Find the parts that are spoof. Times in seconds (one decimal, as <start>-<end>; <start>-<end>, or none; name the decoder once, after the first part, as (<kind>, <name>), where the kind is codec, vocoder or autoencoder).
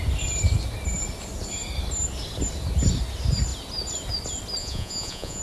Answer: 4.6-5.4 (vocoder, Vocos)